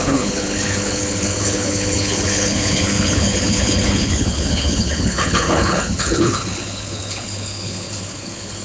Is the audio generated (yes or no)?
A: yes